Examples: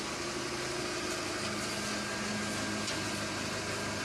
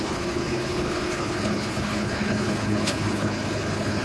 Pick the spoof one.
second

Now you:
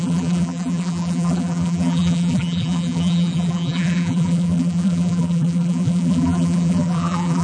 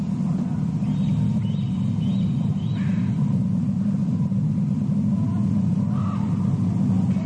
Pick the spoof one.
first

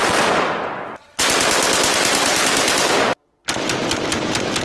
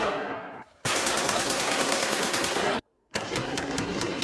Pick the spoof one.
second